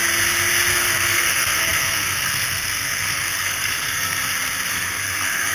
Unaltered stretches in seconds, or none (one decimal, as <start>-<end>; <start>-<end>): 0.0-0.7; 4.2-4.7